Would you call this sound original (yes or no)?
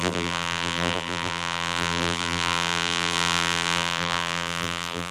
no